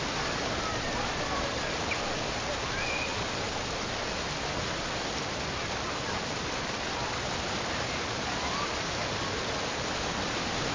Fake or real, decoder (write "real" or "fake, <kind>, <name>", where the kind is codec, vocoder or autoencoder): real